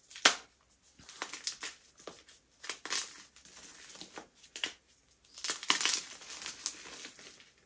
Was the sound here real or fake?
real